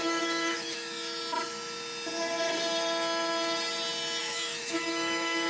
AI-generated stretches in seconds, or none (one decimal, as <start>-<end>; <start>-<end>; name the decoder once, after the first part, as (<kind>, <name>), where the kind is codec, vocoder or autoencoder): 0.0-1.2 (autoencoder, DAC-VAE); 4.2-5.5